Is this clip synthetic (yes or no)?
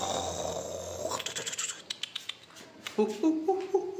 no